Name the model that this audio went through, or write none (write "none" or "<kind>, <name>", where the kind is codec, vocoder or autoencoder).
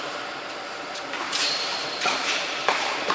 vocoder, BigVGAN v2